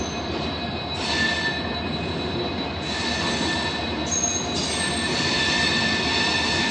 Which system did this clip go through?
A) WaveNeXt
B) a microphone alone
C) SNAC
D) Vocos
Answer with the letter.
B